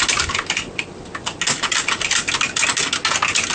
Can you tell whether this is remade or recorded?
recorded